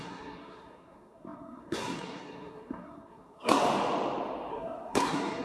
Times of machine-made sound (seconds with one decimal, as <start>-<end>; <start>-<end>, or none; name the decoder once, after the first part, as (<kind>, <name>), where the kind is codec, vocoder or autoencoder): 0.0-3.6 (codec, SNAC); 4.5-5.4